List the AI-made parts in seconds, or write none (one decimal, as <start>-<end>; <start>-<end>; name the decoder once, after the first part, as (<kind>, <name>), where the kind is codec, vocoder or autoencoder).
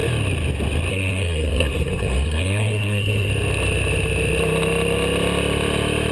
0.9-3.3 (codec, SNAC)